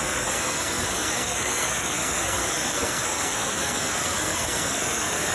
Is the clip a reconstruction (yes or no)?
yes